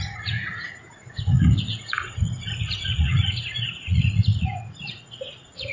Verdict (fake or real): fake